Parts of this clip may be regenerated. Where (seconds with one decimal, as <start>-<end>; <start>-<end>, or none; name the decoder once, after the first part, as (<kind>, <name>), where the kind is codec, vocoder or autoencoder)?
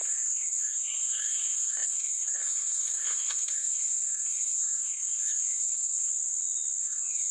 0.0-6.1 (codec, SNAC); 6.8-7.3